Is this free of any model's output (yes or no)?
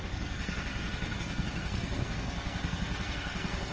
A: no